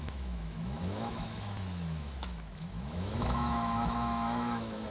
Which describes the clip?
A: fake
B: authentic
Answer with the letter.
A